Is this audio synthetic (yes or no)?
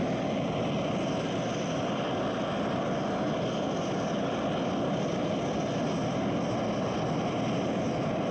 no